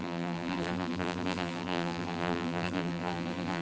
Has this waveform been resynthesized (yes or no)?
yes